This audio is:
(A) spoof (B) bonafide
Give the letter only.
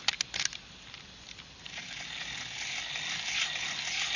B